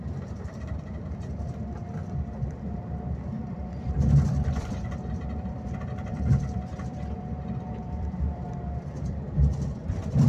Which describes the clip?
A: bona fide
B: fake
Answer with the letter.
B